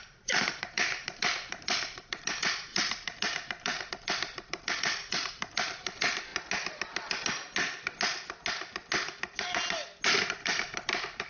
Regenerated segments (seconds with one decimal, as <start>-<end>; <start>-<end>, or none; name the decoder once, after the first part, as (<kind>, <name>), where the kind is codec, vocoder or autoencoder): 0.0-6.3 (vocoder, BigVGAN v2); 10.3-11.3